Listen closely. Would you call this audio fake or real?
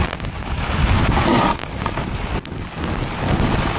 real